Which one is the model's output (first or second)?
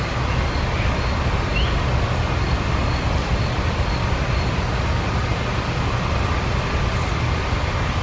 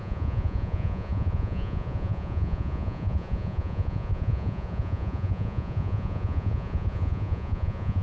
second